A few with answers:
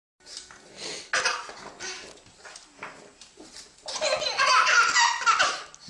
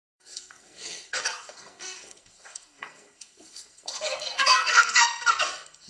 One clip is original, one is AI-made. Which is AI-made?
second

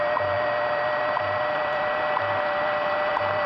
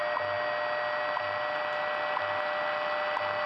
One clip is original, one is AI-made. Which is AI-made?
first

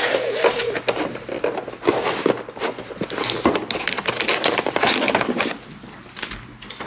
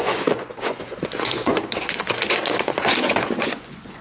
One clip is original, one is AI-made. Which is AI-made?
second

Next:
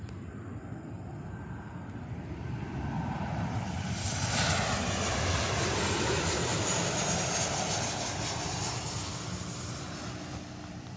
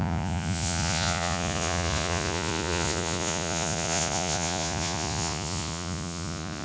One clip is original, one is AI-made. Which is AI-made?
second